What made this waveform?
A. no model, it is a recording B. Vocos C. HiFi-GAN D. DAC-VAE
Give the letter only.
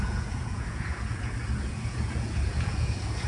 B